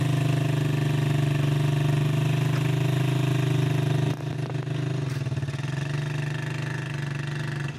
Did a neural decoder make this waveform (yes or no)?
no